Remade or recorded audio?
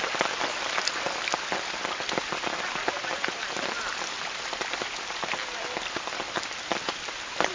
recorded